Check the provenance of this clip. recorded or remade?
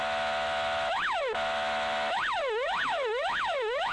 remade